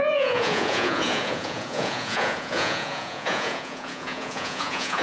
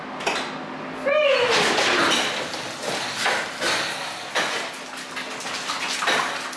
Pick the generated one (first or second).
first